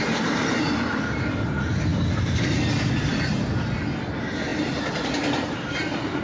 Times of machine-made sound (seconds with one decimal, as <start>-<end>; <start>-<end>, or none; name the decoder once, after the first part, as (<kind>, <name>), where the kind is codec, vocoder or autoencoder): 4.5-6.2 (vocoder, BigVGAN v2)